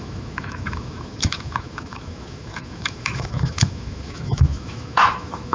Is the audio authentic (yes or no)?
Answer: no